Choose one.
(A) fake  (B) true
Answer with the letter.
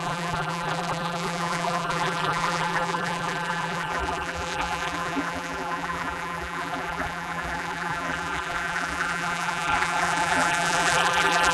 A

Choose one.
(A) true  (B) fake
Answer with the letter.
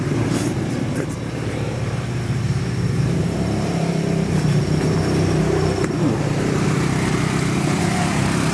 B